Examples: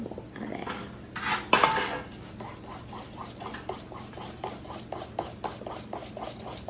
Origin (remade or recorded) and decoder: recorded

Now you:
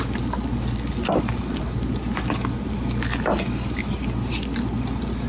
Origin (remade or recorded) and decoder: recorded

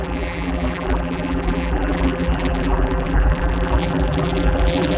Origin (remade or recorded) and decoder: remade, vocoder, BigVGAN v2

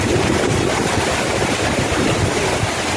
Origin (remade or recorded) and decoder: recorded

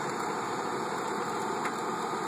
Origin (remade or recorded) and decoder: remade, vocoder, BigVGAN v2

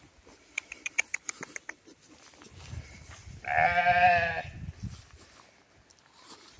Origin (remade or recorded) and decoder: remade, vocoder, BigVGAN v2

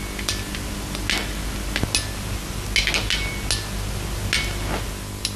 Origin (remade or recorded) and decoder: recorded